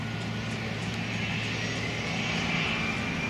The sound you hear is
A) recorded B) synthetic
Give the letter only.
A